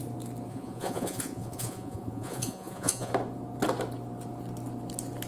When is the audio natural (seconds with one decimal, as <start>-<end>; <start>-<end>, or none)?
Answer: 0.0-0.5; 3.1-5.3

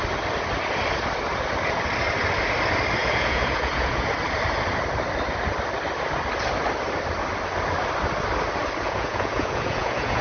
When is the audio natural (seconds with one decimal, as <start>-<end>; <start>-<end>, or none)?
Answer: 0.0-3.0; 4.1-8.8

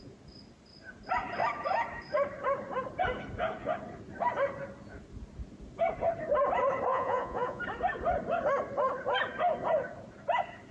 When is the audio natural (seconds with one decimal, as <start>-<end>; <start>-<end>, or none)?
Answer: 0.0-6.9; 7.6-10.7

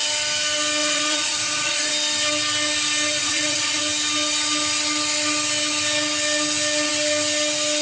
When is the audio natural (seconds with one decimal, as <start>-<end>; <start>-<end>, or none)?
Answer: 0.0-0.8; 1.9-3.2; 3.8-7.8

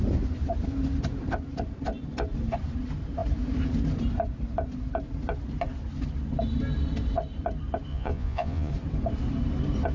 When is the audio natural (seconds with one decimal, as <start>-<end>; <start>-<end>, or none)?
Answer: 0.0-7.9; 8.7-9.9

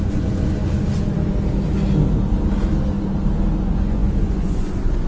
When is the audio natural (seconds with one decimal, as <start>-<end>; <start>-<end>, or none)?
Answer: 0.6-3.6

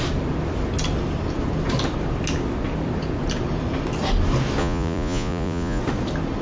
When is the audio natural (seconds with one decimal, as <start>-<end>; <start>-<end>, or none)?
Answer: 0.0-4.6; 5.8-6.4